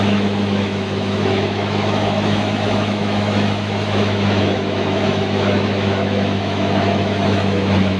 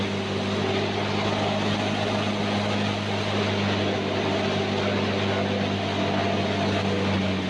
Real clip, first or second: second